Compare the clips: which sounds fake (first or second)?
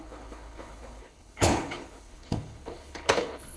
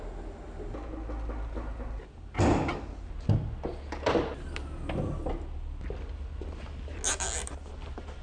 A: first